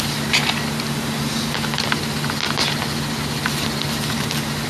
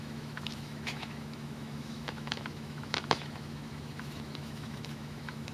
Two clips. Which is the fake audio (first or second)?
second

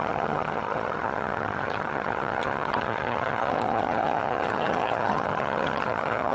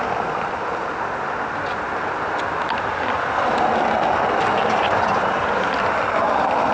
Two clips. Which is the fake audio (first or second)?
first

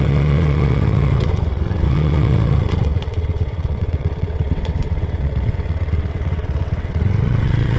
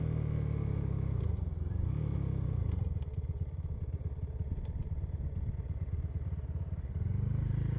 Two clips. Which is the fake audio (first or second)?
first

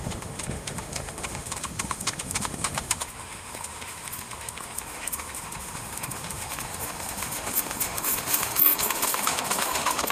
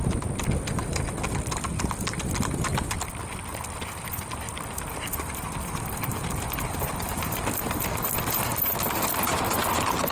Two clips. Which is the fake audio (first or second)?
first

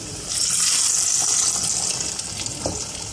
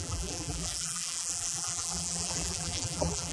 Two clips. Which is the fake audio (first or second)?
second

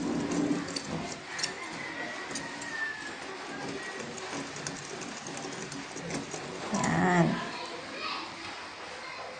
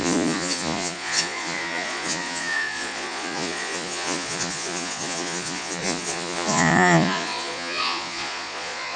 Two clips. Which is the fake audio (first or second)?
second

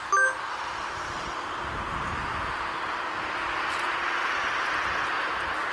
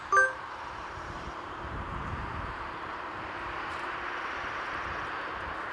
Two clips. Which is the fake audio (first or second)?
second